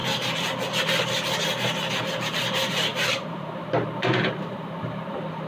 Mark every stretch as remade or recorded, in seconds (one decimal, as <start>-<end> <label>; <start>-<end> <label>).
0.0-1.9 recorded; 1.9-5.5 remade